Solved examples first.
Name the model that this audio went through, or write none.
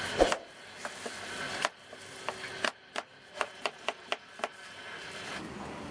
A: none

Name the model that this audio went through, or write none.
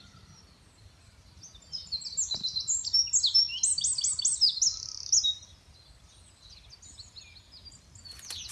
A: none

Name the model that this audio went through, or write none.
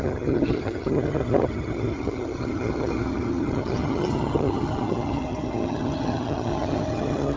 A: vocoder, HiFi-GAN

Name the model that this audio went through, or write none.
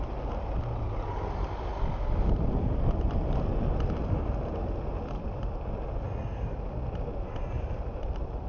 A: none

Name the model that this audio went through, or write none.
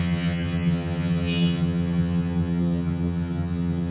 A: vocoder, HiFi-GAN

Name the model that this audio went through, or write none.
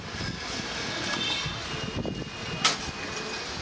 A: none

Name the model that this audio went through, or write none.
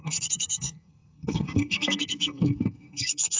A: codec, SNAC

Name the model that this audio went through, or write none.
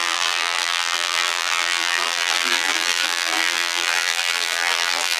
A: vocoder, BigVGAN v2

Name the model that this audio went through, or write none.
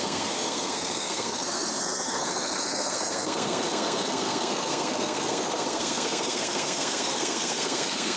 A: codec, SNAC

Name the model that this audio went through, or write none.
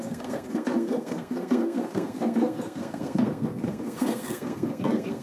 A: codec, SNAC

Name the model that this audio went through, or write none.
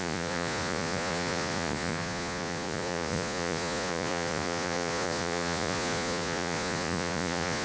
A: vocoder, Vocos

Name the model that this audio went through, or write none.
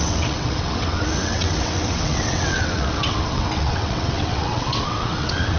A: vocoder, WaveNeXt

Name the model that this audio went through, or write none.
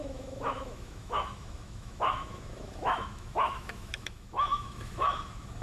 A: autoencoder, DAC-VAE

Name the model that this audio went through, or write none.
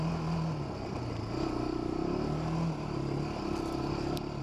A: none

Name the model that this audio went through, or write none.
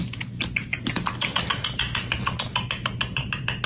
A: none